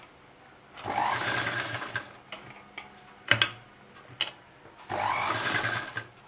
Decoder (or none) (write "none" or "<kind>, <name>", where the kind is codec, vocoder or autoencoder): none